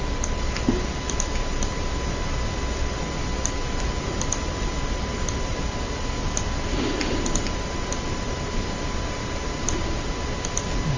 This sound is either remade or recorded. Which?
recorded